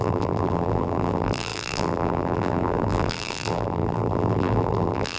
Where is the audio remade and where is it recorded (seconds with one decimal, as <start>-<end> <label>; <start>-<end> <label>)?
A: 0.0-5.2 remade